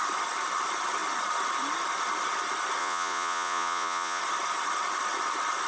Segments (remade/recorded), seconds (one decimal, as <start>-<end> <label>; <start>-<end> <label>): 0.0-2.8 recorded; 2.8-4.2 remade; 4.2-5.7 recorded